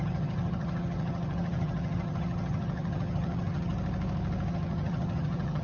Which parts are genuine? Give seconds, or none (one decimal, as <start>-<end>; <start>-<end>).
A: 3.7-4.5